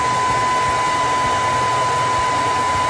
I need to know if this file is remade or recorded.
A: recorded